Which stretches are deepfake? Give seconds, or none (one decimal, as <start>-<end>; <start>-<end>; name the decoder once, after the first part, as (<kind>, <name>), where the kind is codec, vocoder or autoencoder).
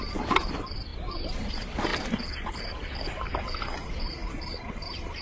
none